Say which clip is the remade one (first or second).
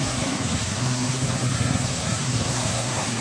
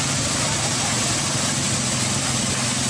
first